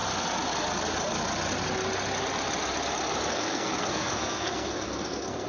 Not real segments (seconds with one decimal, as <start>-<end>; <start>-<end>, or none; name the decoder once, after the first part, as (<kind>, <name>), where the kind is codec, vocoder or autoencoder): 3.3-5.5 (codec, SNAC)